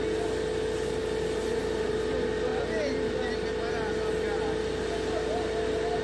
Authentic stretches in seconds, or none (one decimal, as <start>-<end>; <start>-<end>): 0.0-6.0